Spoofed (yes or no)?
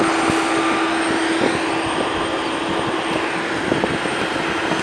no